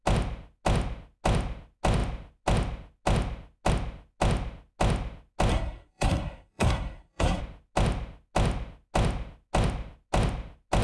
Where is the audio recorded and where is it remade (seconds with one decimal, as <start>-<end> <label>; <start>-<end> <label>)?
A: 0.0-5.5 recorded; 5.5-7.4 remade; 7.4-10.8 recorded